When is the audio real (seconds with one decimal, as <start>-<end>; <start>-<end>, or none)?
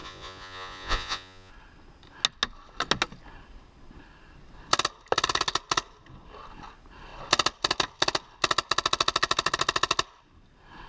1.5-10.9